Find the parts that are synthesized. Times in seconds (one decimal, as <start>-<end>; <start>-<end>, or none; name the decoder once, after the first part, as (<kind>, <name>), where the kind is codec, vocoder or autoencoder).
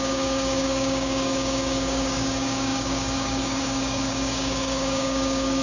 0.0-5.6 (codec, DAC)